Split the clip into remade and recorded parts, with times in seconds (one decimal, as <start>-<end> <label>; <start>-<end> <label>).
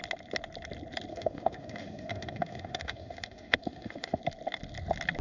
0.0-1.1 recorded; 1.1-4.2 remade; 4.2-5.2 recorded